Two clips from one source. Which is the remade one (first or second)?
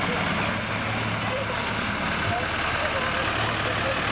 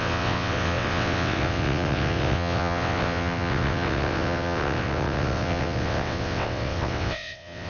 second